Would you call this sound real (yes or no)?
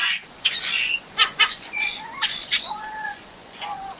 no